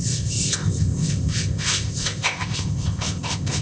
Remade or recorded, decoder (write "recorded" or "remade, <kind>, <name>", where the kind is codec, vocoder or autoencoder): remade, codec, ZipCodec